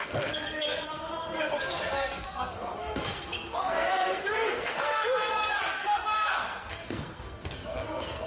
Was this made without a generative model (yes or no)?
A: no